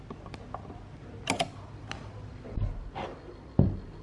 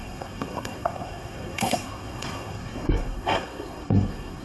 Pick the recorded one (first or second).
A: first